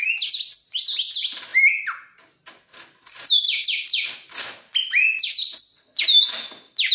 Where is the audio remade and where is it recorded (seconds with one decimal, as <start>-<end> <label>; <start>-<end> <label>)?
0.0-6.9 recorded